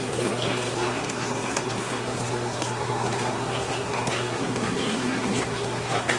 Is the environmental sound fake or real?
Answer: fake